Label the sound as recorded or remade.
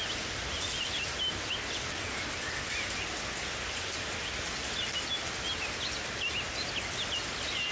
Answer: recorded